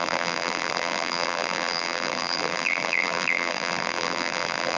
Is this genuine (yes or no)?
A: no